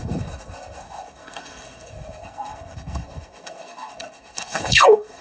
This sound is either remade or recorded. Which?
remade